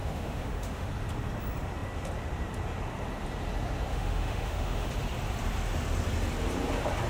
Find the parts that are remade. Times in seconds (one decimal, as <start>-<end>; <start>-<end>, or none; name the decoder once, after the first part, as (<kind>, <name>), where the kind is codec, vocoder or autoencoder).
0.0-0.9 (autoencoder, DAC-VAE); 3.9-4.9